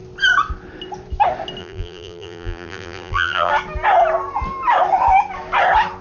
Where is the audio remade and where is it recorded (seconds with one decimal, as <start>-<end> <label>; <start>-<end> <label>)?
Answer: 0.0-1.6 recorded; 1.6-3.5 remade; 3.5-6.0 recorded